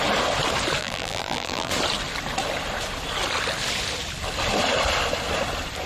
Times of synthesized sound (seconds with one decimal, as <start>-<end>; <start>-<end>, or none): 0.8-1.7